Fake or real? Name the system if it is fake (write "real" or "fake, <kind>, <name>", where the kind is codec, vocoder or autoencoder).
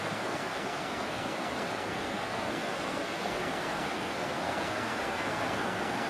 fake, codec, SNAC